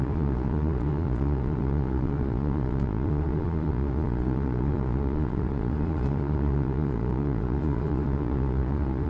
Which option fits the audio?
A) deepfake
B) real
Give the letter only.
A